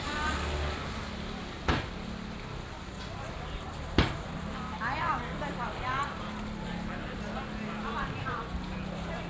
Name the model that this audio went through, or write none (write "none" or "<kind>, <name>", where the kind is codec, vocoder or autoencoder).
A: none